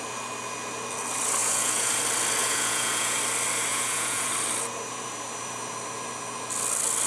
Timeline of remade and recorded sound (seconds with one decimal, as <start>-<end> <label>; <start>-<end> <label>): 0.0-1.4 recorded; 1.4-2.0 remade; 2.0-2.4 recorded; 2.4-3.2 remade; 3.2-3.7 recorded; 3.7-4.3 remade; 4.3-7.1 recorded